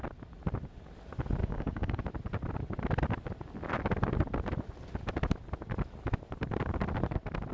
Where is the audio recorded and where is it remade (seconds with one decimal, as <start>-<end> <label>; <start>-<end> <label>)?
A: 0.0-1.4 recorded; 1.4-2.0 remade; 2.0-7.5 recorded